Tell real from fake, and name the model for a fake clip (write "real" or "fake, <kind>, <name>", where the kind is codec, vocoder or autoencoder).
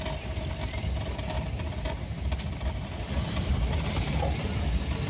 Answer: real